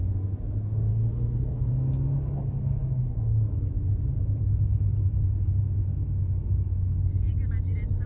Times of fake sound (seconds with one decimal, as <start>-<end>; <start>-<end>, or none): 0.9-1.7